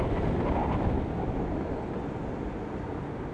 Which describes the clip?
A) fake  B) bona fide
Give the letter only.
B